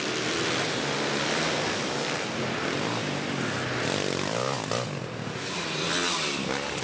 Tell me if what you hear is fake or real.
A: real